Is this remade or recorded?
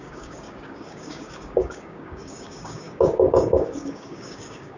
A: remade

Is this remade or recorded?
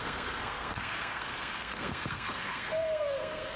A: remade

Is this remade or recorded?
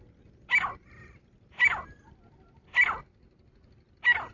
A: recorded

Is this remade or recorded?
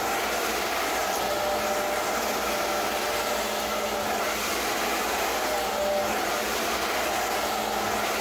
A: recorded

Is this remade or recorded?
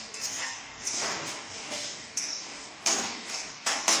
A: remade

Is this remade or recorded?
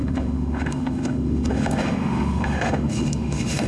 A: remade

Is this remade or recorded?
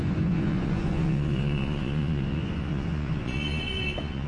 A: remade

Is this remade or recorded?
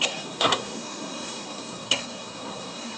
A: remade